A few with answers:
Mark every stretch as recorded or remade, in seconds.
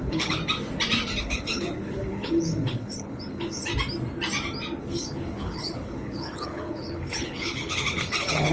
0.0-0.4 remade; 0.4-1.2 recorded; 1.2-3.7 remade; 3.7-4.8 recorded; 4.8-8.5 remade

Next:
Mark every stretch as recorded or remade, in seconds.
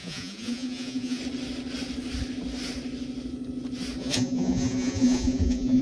0.0-1.2 remade; 1.2-4.0 recorded; 4.0-5.8 remade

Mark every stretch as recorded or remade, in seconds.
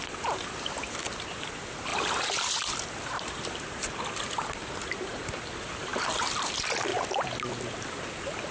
0.0-8.5 recorded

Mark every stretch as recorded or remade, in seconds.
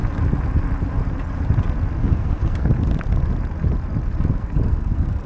0.0-2.0 recorded; 2.0-2.7 remade; 2.7-4.3 recorded; 4.3-5.3 remade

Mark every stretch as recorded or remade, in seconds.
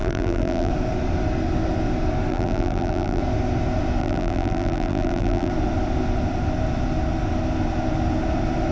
0.0-0.7 remade; 0.7-2.3 recorded; 2.3-3.2 remade; 3.2-4.0 recorded; 4.0-5.5 remade; 5.5-8.7 recorded